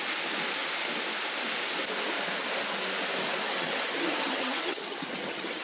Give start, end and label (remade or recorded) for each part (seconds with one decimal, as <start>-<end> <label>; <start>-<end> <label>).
0.0-3.4 recorded; 3.4-5.6 remade